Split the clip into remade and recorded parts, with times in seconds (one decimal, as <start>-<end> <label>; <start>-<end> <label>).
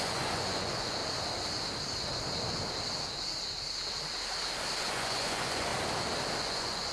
0.0-1.0 remade; 1.0-4.8 recorded; 4.8-5.7 remade; 5.7-6.4 recorded; 6.4-6.9 remade